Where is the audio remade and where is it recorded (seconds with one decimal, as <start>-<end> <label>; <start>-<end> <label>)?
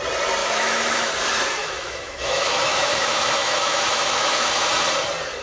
0.0-0.4 recorded; 0.4-1.1 remade; 1.1-1.6 recorded; 1.6-4.7 remade; 4.7-5.4 recorded